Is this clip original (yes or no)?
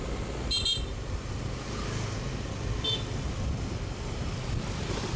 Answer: yes